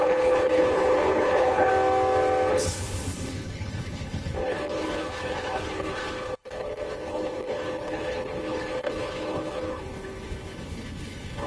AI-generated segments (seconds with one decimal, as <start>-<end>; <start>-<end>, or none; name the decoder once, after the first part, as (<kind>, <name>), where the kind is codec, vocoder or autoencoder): 0.0-1.7 (codec, HILCodec); 2.5-11.5